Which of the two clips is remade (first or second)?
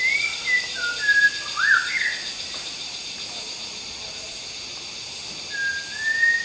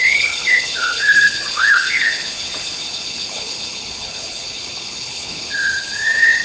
second